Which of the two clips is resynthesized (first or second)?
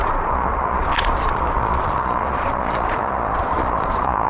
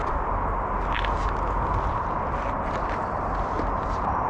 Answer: first